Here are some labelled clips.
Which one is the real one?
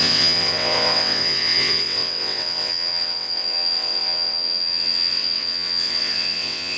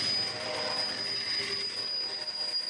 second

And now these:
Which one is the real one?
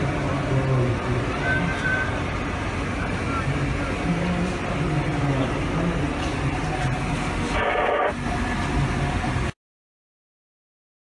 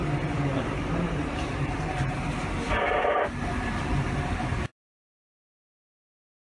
first